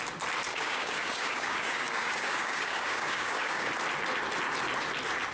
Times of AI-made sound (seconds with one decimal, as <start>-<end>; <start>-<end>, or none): 0.5-3.7